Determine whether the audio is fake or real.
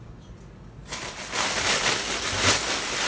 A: real